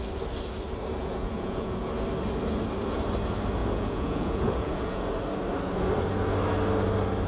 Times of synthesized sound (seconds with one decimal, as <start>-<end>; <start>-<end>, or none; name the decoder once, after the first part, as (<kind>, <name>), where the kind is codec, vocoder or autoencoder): 1.0-1.8 (vocoder, Vocos); 3.6-5.0